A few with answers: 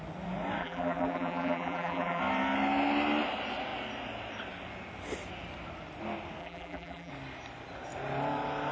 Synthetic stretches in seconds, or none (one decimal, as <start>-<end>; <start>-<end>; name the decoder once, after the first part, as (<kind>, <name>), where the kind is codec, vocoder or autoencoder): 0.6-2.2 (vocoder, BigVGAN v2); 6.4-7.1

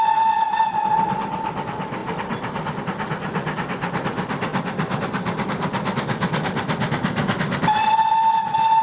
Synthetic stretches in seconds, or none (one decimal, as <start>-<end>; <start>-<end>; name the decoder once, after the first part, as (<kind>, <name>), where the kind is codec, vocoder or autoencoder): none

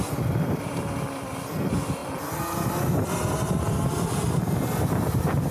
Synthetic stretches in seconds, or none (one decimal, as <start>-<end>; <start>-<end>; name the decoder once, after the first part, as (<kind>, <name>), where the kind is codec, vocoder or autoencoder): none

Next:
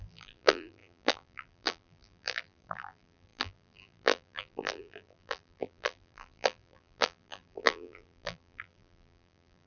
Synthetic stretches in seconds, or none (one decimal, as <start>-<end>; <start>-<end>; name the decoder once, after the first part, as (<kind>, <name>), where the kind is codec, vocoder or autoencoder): 0.0-9.7 (vocoder, BigVGAN v2)

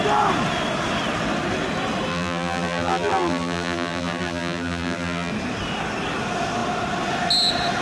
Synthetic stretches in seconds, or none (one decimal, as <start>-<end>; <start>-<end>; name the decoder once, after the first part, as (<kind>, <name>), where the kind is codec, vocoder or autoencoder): 2.1-5.3 (vocoder, BigVGAN v2)

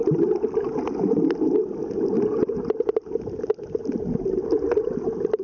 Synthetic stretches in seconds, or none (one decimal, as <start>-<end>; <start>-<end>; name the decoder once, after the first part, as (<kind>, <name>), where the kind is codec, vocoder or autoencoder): 2.3-3.5 (vocoder, BigVGAN v2)